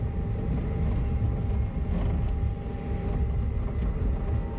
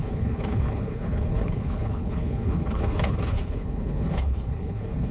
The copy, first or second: second